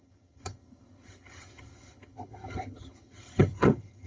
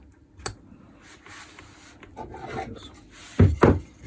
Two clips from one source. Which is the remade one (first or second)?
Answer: first